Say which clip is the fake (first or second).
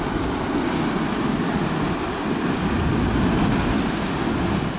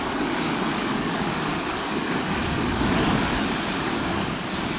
second